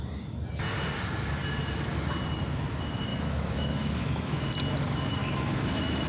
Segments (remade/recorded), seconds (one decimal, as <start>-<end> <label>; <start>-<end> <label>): 0.0-3.1 recorded; 3.1-4.5 remade; 4.5-5.2 recorded; 5.2-6.1 remade